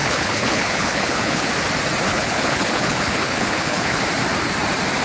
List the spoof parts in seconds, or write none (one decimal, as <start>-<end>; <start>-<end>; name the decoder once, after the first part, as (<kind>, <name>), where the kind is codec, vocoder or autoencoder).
0.0-1.5 (codec, HILCodec); 2.1-4.0